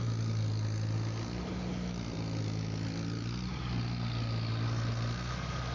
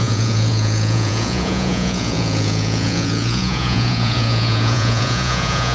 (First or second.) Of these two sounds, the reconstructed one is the second